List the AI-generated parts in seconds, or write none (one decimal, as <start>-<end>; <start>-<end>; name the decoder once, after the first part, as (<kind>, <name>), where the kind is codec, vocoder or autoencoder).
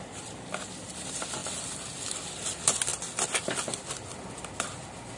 none